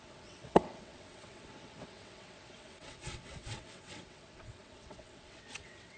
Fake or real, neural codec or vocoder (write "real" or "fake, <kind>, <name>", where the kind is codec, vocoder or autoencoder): fake, vocoder, WaveNeXt